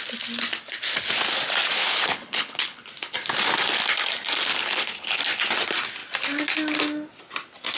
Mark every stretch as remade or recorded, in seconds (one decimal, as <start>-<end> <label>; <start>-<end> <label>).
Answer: 0.0-1.8 recorded; 1.8-2.8 remade; 2.8-4.5 recorded; 4.5-5.2 remade; 5.2-7.8 recorded